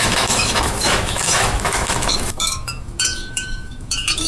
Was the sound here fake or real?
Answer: fake